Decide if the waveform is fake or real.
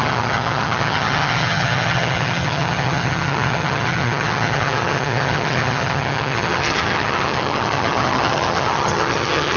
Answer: fake